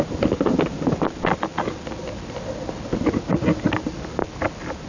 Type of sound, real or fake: real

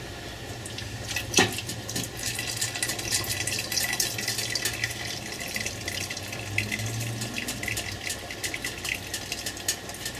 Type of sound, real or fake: real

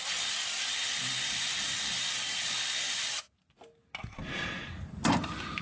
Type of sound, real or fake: real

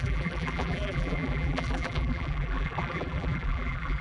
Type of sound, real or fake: fake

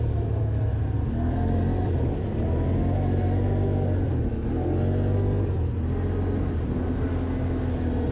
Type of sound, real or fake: real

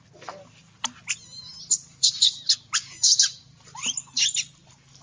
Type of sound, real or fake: real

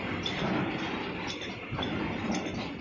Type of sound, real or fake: real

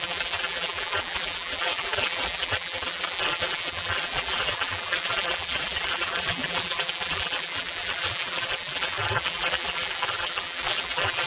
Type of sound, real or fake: fake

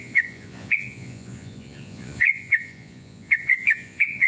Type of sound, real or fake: fake